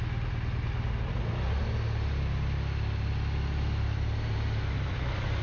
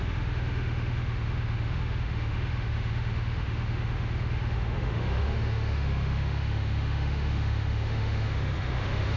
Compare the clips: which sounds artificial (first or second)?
second